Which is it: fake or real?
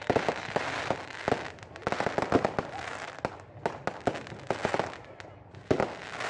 real